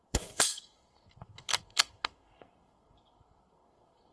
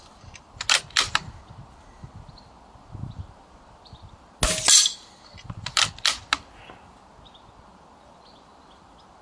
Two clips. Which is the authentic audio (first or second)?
second